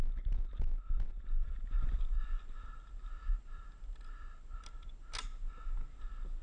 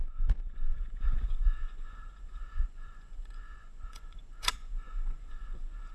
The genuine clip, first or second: first